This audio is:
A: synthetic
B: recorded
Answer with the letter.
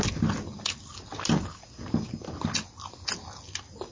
B